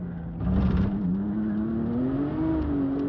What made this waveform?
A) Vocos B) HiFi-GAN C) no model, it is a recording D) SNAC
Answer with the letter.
C